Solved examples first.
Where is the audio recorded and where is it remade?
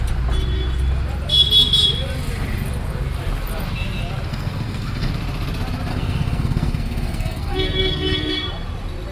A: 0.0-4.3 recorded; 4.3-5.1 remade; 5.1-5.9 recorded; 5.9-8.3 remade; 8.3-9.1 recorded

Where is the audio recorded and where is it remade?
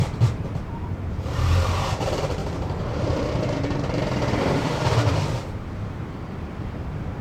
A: 0.0-7.2 remade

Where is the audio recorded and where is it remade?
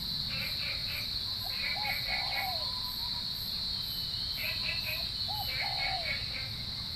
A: 0.0-7.0 recorded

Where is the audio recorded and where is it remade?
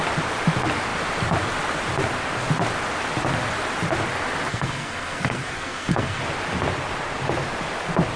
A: 0.0-4.5 recorded; 4.5-6.2 remade; 6.2-8.2 recorded